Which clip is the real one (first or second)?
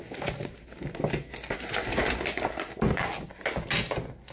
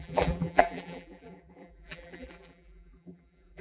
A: first